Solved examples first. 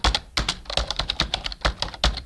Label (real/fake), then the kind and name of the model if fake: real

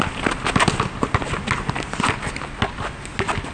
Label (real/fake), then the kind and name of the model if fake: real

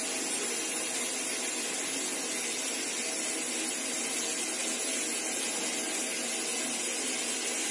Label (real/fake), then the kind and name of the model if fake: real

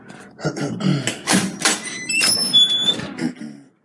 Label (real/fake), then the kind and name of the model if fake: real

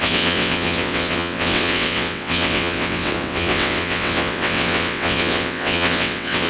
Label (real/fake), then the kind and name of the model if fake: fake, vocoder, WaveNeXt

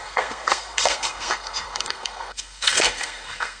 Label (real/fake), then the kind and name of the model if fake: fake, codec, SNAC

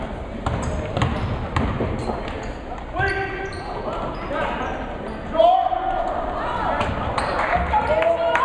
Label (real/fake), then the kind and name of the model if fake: real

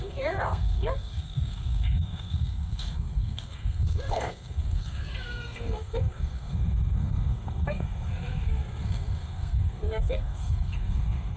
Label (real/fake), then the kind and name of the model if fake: fake, codec, SNAC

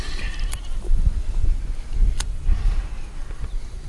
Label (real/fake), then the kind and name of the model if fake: fake, vocoder, BigVGAN v2